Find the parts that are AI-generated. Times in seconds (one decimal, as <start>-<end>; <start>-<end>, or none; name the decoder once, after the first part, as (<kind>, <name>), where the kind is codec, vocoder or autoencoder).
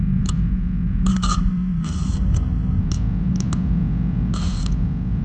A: 1.1-2.8 (codec, SNAC)